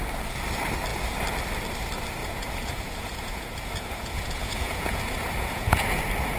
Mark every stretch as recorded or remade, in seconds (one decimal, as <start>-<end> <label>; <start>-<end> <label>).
0.0-2.2 recorded; 2.2-6.0 remade; 6.0-6.4 recorded